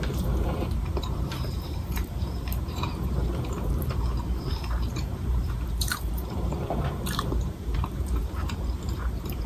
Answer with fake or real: fake